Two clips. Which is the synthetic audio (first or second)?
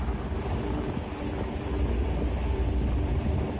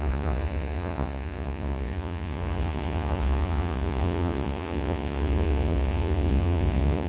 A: second